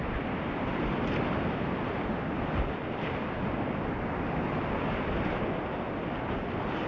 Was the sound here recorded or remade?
recorded